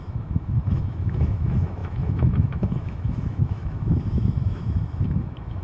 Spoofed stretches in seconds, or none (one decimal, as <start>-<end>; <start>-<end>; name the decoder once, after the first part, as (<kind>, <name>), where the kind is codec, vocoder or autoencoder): 0.0-5.6 (autoencoder, DAC-VAE)